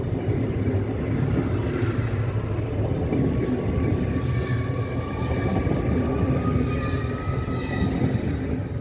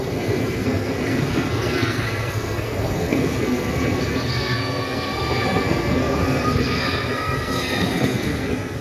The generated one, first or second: second